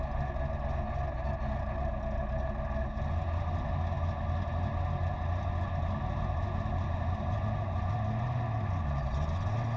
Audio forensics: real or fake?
real